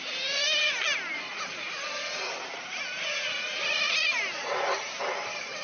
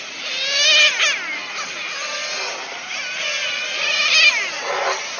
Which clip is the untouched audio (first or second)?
second